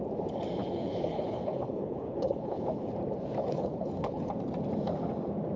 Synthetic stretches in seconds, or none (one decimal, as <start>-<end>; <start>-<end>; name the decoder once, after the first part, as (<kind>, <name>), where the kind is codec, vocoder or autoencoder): 0.6-2.9 (codec, HILCodec); 3.4-4.3